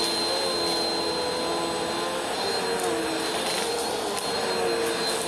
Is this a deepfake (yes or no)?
no